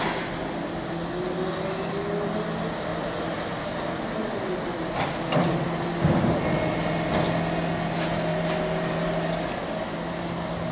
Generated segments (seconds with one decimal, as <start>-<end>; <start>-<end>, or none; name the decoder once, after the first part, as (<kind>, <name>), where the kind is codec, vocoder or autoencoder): 2.9-3.9 (vocoder, BigVGAN v2); 8.3-9.3